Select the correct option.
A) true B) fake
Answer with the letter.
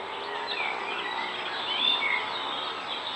A